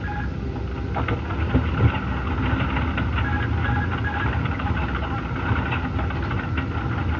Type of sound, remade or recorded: recorded